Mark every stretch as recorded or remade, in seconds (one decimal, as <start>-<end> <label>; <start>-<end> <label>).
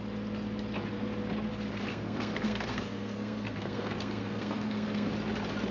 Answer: 0.0-1.9 recorded; 1.9-5.1 remade; 5.1-5.7 recorded